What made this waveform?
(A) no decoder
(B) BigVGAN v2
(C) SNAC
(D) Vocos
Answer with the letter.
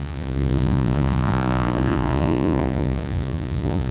D